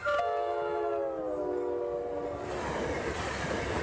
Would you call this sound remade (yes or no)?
no